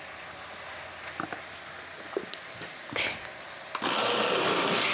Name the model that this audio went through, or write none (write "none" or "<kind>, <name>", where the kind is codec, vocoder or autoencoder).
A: none